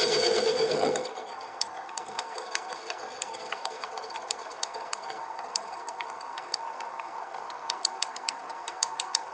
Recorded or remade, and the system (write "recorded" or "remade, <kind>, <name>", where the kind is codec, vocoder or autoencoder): remade, codec, SNAC